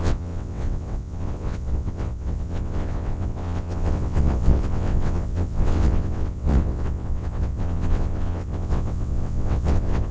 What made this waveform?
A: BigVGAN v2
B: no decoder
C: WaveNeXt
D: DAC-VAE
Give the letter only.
C